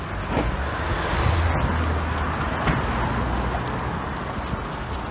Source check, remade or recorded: recorded